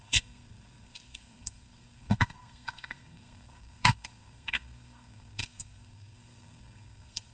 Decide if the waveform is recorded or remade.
remade